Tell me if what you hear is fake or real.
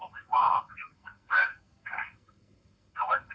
fake